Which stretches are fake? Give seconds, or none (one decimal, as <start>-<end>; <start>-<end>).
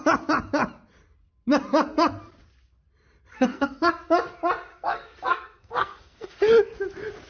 3.3-3.9; 4.7-6.4